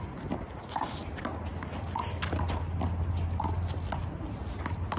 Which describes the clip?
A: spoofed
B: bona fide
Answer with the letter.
B